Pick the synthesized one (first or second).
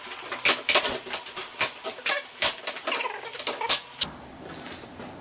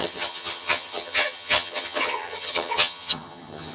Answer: second